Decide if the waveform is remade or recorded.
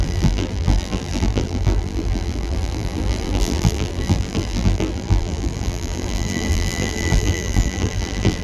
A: remade